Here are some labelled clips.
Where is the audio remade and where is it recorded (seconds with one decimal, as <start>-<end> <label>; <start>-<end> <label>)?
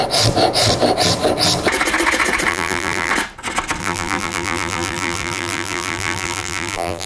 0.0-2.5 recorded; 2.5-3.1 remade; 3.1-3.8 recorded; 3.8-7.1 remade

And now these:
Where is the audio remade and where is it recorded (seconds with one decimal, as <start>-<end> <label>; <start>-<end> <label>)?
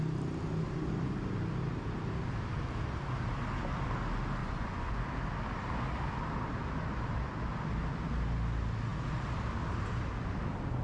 0.0-4.4 recorded; 4.4-5.0 remade; 5.0-10.8 recorded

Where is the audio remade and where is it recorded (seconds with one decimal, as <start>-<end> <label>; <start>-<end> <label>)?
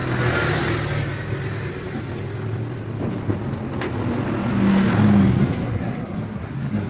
0.0-5.4 recorded; 5.4-6.9 remade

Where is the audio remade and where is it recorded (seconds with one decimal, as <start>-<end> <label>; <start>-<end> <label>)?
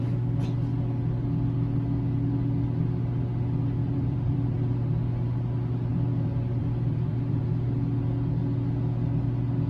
0.0-3.8 recorded; 3.8-4.6 remade; 4.6-5.9 recorded; 5.9-7.5 remade; 7.5-9.7 recorded